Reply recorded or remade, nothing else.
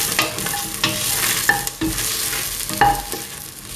recorded